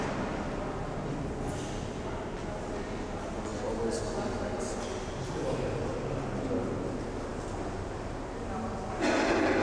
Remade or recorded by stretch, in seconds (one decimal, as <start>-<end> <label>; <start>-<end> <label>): 0.0-9.6 recorded